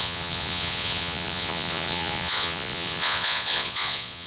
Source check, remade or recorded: remade